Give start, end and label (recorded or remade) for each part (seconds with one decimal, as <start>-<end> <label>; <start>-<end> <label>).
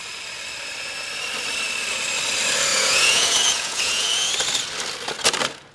0.0-2.7 recorded; 2.7-4.3 remade; 4.3-5.7 recorded